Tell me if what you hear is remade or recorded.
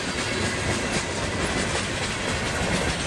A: recorded